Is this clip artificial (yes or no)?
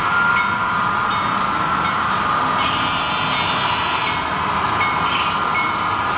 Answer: no